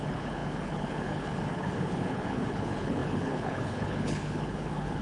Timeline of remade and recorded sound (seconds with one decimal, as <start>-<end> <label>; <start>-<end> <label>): 0.0-5.0 remade